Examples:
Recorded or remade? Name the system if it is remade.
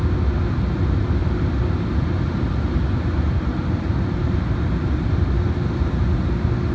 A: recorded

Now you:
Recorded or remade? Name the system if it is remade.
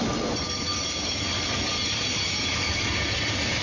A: recorded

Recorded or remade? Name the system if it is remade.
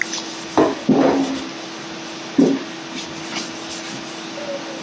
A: recorded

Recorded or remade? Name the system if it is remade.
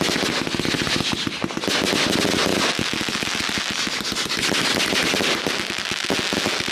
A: recorded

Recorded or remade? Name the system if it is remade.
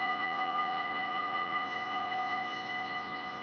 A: remade, vocoder, Vocos